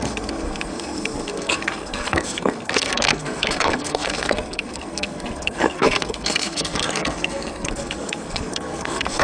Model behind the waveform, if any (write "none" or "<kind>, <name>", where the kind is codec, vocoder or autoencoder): codec, SNAC